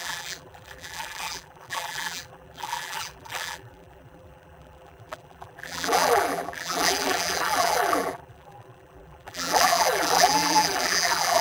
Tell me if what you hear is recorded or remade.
remade